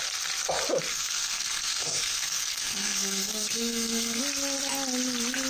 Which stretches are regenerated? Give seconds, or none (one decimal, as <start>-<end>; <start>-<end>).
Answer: 0.9-4.2